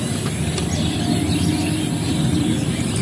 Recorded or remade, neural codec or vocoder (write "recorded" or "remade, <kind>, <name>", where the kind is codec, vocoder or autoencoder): recorded